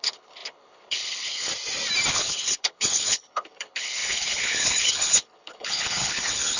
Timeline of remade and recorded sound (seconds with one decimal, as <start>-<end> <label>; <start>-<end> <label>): 0.0-1.5 remade; 1.5-2.1 recorded; 2.1-6.6 remade